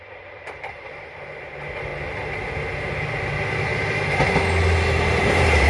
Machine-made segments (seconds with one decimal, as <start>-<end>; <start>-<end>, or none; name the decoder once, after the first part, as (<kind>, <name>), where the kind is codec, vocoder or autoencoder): 0.0-1.9 (vocoder, BigVGAN v2); 5.3-5.7

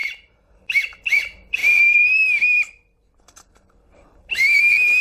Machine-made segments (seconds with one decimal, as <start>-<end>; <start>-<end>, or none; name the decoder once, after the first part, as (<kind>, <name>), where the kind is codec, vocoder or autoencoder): 0.0-0.5 (vocoder, BigVGAN v2); 1.6-3.5

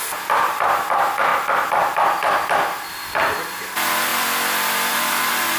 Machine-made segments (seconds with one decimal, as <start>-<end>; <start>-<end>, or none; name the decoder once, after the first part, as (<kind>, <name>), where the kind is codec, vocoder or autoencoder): 0.0-1.3 (vocoder, BigVGAN v2); 2.9-4.1; 4.9-5.6

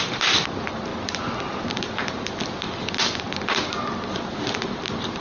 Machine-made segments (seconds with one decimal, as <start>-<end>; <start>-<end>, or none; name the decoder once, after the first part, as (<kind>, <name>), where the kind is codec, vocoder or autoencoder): none